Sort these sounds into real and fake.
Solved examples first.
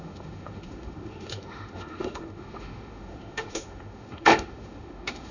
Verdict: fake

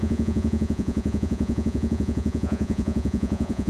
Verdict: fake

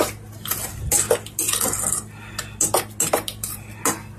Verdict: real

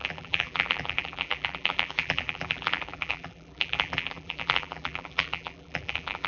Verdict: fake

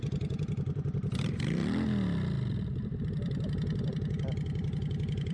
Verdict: fake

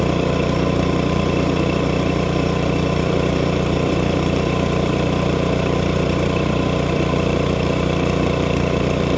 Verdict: fake